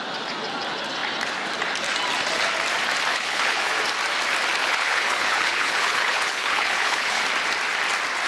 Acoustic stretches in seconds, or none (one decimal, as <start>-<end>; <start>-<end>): 0.0-3.1; 3.7-4.6; 7.2-8.3